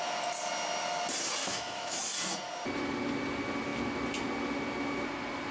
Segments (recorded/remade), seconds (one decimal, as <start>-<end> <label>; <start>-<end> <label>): 0.0-1.4 recorded; 1.4-2.0 remade; 2.0-5.5 recorded